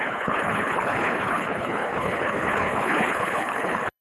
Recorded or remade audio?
remade